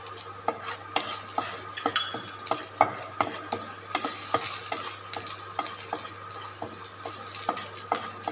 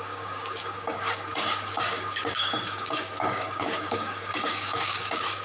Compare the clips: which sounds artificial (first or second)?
second